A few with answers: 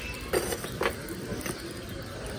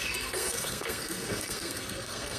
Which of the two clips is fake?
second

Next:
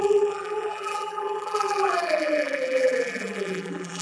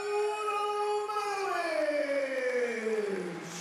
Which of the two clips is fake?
first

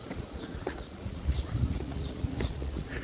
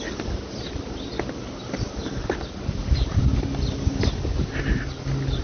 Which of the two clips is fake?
first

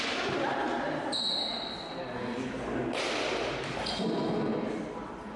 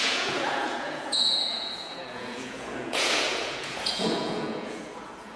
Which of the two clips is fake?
second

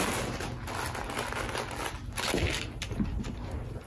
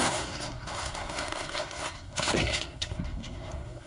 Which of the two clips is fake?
second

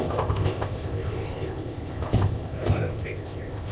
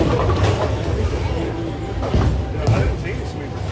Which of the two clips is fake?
first